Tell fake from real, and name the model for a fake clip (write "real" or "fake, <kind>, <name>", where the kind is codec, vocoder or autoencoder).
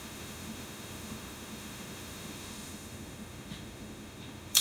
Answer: fake, autoencoder, DAC-VAE